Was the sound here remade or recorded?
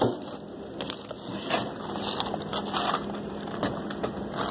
recorded